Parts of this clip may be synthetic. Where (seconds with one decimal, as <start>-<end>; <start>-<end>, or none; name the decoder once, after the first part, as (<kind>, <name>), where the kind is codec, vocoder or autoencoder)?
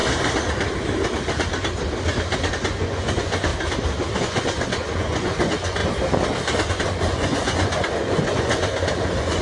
2.5-3.5 (vocoder, Vocos); 4.2-5.8; 6.7-9.4